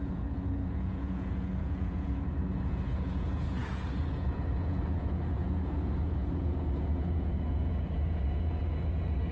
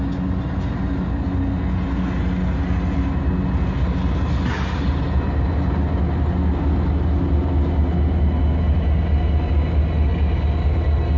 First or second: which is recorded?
second